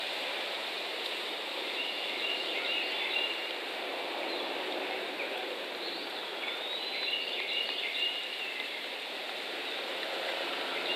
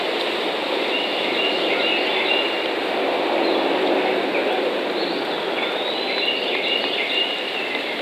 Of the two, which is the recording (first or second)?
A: second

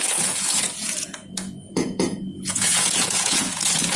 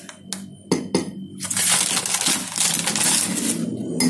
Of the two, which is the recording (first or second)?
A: second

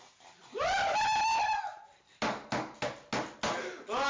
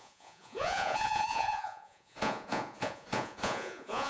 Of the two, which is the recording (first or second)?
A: first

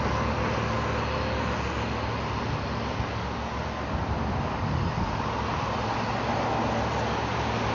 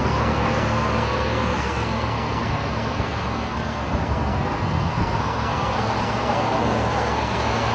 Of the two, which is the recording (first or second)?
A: first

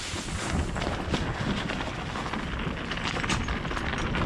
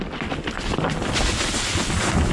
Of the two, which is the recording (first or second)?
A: first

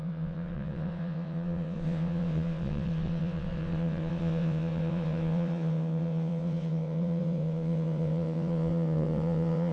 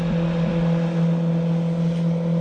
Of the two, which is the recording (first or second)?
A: second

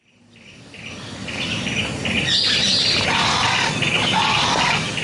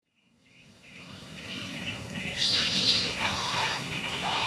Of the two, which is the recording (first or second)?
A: first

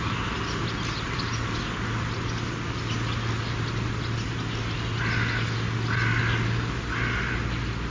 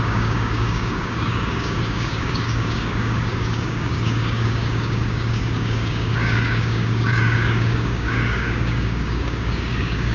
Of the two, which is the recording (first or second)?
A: first